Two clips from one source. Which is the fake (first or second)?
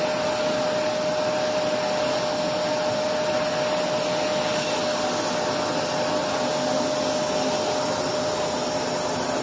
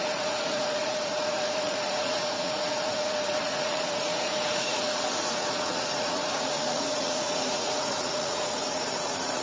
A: second